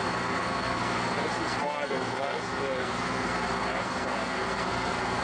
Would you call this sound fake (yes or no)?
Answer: yes